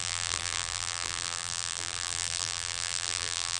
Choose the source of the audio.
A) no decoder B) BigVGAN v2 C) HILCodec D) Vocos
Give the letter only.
B